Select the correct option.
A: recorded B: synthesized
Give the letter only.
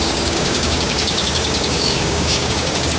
B